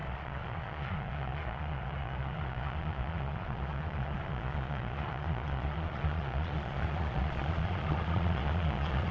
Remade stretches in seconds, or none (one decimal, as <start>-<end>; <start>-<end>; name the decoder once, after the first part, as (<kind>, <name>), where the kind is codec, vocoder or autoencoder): 0.0-9.1 (vocoder, Vocos)